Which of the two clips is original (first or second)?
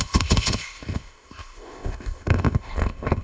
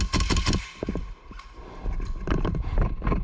second